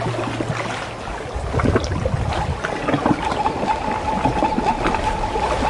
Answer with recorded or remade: recorded